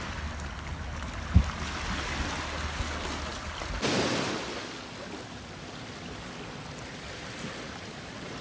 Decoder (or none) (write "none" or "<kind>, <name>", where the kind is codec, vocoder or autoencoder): none